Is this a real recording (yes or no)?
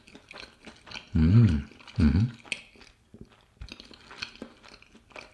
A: yes